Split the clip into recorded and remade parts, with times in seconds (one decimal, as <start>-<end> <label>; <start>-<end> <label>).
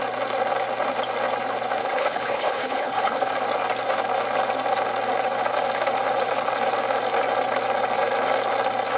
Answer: 0.0-1.8 recorded; 1.8-3.3 remade; 3.3-9.0 recorded